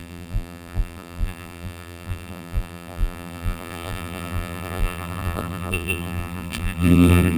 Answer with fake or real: fake